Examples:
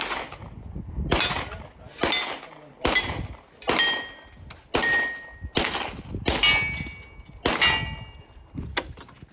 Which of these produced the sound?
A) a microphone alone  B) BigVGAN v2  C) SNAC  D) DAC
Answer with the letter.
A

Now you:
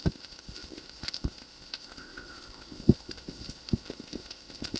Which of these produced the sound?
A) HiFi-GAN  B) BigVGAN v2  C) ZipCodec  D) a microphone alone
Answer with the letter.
C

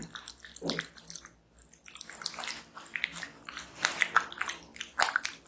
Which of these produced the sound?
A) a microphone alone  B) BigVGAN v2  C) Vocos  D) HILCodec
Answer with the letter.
A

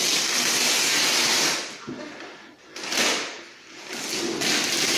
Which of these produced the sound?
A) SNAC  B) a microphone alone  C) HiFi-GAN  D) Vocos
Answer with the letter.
B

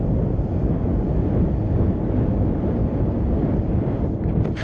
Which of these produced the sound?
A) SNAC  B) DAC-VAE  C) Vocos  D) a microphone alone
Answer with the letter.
D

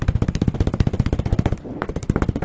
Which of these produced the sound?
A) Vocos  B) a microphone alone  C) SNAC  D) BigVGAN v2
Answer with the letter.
B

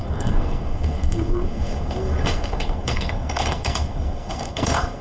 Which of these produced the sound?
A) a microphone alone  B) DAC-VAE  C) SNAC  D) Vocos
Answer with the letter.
C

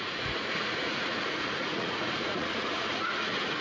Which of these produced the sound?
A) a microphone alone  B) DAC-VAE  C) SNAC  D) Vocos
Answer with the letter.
D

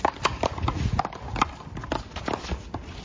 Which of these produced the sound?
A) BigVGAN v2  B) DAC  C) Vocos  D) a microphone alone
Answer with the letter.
D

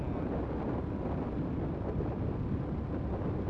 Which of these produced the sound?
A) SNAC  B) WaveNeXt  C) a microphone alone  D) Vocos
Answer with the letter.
C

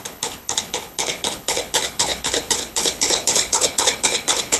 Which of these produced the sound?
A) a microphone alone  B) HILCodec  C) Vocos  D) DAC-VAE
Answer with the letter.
B